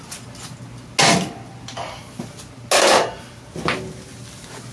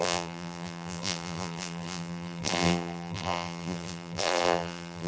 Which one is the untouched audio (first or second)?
first